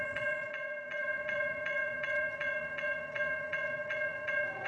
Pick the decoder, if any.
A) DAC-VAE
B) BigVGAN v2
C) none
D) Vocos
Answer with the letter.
D